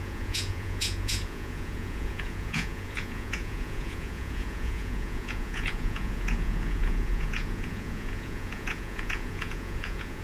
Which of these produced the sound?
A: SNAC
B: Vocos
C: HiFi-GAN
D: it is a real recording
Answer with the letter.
B